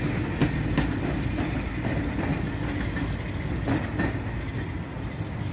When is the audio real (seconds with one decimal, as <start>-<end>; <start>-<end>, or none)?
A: 0.0-5.5